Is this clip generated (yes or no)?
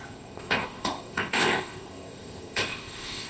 yes